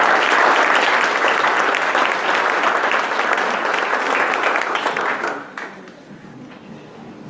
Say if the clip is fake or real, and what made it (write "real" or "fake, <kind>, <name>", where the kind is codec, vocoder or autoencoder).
real